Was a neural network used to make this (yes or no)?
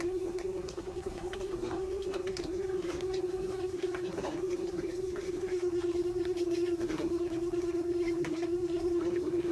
yes